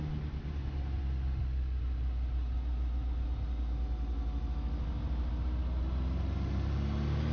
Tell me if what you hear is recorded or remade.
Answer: recorded